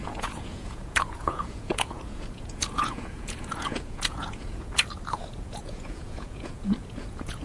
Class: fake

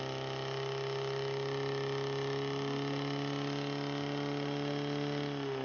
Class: real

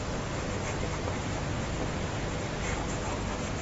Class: real